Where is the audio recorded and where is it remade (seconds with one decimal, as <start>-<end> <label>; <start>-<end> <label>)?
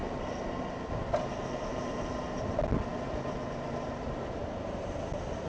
0.0-0.6 remade; 0.6-1.7 recorded; 1.7-2.4 remade; 2.4-4.4 recorded; 4.4-4.9 remade; 4.9-5.5 recorded